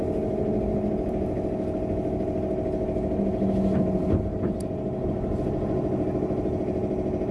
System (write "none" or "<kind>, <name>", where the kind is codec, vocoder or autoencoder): none